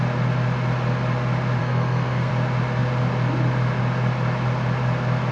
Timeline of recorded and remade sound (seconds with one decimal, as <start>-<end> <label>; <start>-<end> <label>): 0.0-1.6 recorded; 1.6-2.3 remade; 2.3-5.3 recorded